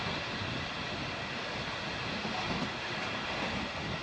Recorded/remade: recorded